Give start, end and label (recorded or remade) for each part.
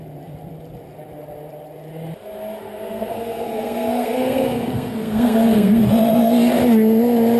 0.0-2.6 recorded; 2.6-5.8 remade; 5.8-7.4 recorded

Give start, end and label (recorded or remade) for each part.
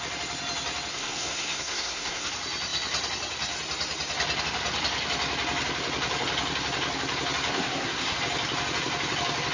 0.0-0.9 recorded; 0.9-2.3 remade; 2.3-7.5 recorded; 7.5-8.2 remade; 8.2-9.5 recorded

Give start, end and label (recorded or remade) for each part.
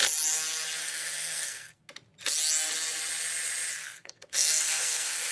0.0-0.8 recorded; 0.8-1.9 remade; 1.9-3.8 recorded; 3.8-5.3 remade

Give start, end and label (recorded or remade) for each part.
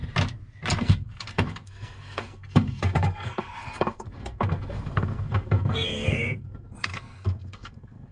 0.0-0.8 recorded; 0.8-8.1 remade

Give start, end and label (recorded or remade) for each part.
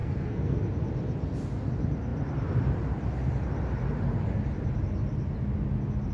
0.0-0.6 remade; 0.6-6.1 recorded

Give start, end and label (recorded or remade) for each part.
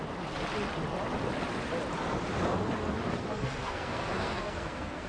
0.0-3.1 recorded; 3.1-5.1 remade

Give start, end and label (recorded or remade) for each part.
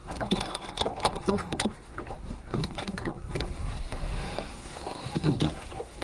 0.0-6.0 remade